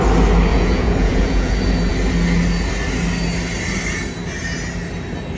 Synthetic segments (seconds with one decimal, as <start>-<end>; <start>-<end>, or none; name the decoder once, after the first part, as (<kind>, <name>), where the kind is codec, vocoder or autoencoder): 0.5-1.5 (vocoder, Vocos)